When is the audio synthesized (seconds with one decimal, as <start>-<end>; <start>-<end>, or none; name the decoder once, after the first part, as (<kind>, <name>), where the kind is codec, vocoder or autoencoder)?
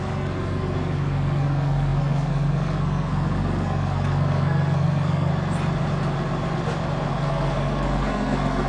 0.0-5.3 (codec, SNAC); 7.1-8.7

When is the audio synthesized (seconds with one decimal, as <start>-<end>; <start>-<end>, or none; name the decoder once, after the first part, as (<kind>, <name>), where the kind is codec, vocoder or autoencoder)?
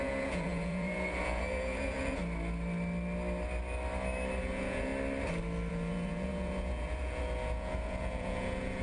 0.0-2.2 (vocoder, Vocos); 4.4-4.9; 5.7-8.8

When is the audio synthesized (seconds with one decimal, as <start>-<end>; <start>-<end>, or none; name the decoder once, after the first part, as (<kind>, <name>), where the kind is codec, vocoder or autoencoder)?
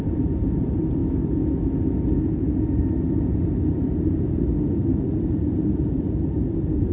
0.0-1.0 (vocoder, BigVGAN v2); 2.7-4.5; 5.2-6.9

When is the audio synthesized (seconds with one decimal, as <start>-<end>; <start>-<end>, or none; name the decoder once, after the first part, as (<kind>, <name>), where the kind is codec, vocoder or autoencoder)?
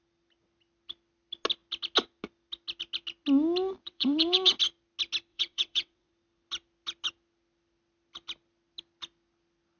3.8-4.6 (vocoder, WaveNeXt); 5.3-6.1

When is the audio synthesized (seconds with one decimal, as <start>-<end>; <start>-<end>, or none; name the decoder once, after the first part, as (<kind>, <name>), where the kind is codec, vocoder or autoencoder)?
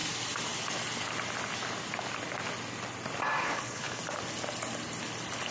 3.4-4.0 (codec, HILCodec)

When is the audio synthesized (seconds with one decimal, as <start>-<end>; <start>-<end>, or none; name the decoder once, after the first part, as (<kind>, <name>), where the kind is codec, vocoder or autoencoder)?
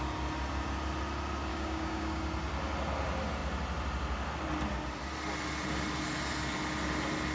1.5-2.2 (codec, DAC)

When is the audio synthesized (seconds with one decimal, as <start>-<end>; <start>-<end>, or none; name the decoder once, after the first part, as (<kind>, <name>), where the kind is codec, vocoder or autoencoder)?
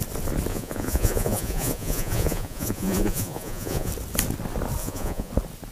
0.5-3.9 (vocoder, Vocos); 4.8-5.3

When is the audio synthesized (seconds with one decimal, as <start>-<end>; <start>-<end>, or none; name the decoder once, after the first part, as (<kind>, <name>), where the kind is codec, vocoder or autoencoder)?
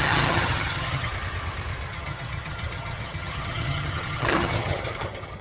0.0-1.1 (vocoder, HiFi-GAN); 1.9-5.4